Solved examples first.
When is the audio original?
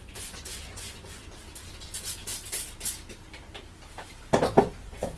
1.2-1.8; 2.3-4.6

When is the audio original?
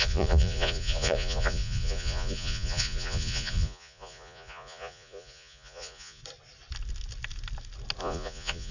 6.2-8.0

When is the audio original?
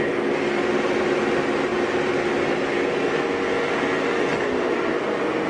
0.0-5.5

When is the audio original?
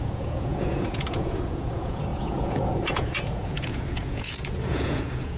none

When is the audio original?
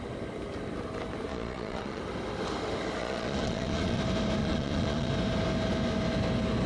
0.0-1.3; 2.0-3.0; 4.0-4.4; 5.1-6.7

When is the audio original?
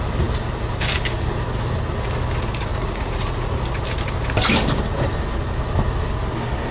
0.0-2.7; 3.5-6.7